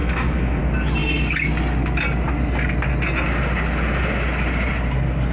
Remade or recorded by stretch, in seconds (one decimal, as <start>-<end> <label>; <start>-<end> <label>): 0.0-0.6 remade; 0.6-5.3 recorded